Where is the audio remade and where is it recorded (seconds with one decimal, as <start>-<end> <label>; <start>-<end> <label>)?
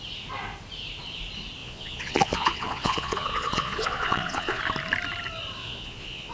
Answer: 0.0-1.6 recorded; 1.6-4.6 remade; 4.6-5.6 recorded; 5.6-6.3 remade